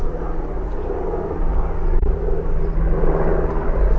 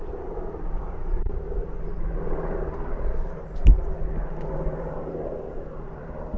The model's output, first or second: second